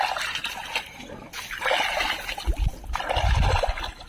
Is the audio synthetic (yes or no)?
no